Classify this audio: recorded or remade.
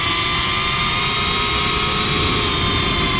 recorded